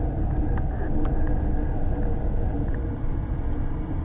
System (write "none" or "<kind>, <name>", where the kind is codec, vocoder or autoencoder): none